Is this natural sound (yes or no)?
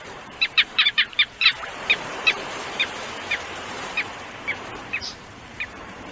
no